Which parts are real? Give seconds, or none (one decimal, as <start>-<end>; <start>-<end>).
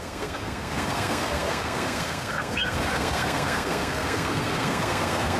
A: none